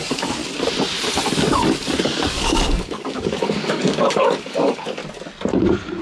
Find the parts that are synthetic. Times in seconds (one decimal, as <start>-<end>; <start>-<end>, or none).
0.0-0.4; 1.3-5.0